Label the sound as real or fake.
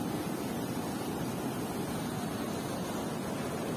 real